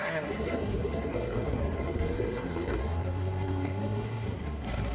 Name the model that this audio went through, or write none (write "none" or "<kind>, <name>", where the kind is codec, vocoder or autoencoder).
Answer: codec, SNAC